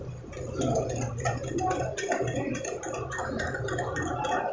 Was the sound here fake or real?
real